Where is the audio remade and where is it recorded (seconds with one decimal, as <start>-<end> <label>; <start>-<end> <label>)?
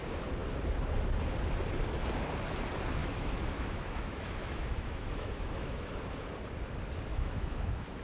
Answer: 0.0-3.0 recorded; 3.0-5.9 remade; 5.9-7.1 recorded; 7.1-8.0 remade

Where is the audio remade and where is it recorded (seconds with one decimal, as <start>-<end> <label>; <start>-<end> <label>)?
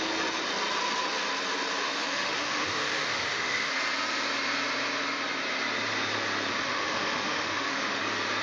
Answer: 0.0-1.8 recorded; 1.8-3.7 remade; 3.7-6.5 recorded; 6.5-8.0 remade; 8.0-8.4 recorded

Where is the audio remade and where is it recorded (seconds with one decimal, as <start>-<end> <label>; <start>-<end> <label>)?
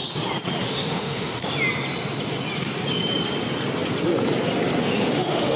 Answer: 0.0-0.6 recorded; 0.6-1.4 remade; 1.4-4.8 recorded; 4.8-5.6 remade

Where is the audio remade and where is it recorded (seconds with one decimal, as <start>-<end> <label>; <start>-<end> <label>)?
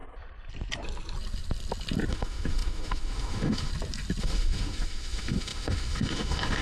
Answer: 0.0-2.1 recorded; 2.1-3.7 remade; 3.7-4.2 recorded; 4.2-6.6 remade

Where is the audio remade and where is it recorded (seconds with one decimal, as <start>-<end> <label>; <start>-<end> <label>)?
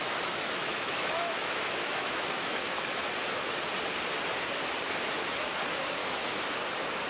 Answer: 0.0-3.0 remade; 3.0-6.0 recorded; 6.0-6.6 remade; 6.6-7.1 recorded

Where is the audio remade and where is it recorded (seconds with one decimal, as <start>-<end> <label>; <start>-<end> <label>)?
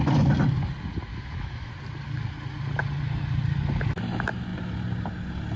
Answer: 0.0-1.1 recorded; 1.1-1.7 remade; 1.7-5.6 recorded